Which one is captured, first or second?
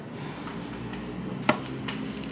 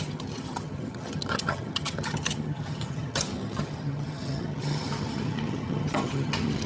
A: first